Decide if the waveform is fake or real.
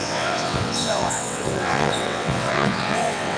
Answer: fake